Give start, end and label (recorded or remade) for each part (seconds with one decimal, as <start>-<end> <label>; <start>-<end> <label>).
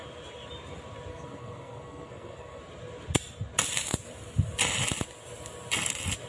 0.0-1.1 recorded; 1.1-2.6 remade; 2.6-6.3 recorded